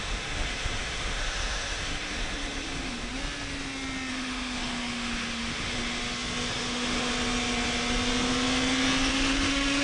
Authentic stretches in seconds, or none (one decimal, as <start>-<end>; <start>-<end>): 3.1-4.1; 6.0-6.5; 7.1-9.1